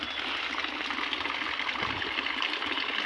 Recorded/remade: recorded